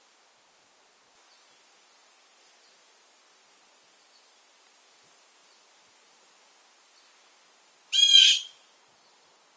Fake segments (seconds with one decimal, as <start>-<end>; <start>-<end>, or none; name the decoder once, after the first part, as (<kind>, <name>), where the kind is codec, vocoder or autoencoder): none